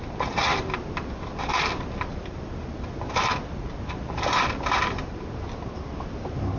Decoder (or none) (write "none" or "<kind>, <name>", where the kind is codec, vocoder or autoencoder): none